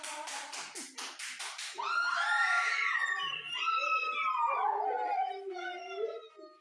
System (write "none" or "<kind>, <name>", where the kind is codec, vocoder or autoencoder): none